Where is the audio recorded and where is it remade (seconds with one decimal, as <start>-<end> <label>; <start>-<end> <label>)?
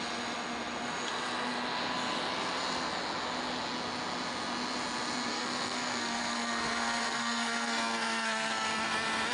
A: 0.0-5.3 recorded; 5.3-8.5 remade; 8.5-9.3 recorded